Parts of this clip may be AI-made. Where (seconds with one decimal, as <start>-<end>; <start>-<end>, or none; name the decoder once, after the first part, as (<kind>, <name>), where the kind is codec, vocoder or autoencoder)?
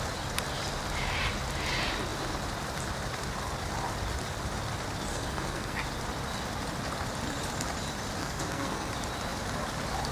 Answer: 5.1-5.8 (codec, SNAC); 8.2-8.9